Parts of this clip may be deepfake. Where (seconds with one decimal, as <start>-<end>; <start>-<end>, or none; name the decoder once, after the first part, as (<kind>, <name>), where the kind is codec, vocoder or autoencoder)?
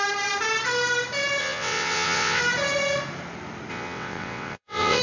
1.4-2.4 (vocoder, WaveNeXt); 3.7-5.0